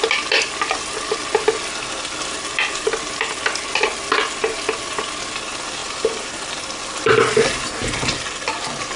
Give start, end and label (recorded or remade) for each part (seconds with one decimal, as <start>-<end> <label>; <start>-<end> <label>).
0.0-9.0 recorded